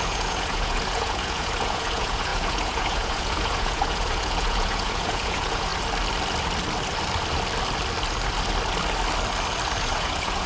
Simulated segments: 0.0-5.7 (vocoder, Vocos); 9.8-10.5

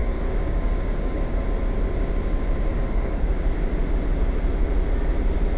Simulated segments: 0.0-1.4 (codec, DAC); 2.7-3.3

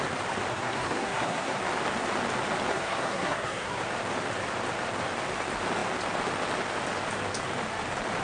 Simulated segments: 0.5-1.6 (codec, SNAC); 2.7-3.8

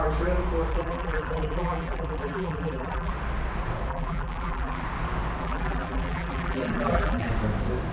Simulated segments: 0.7-3.1 (vocoder, BigVGAN v2); 3.9-4.8; 5.4-7.3

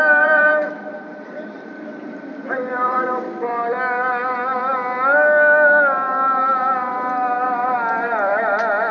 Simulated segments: 0.0-3.6 (vocoder, BigVGAN v2); 6.9-8.9